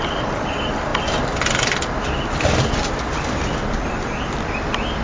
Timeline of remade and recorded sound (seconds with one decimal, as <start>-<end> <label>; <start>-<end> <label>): 0.0-5.0 recorded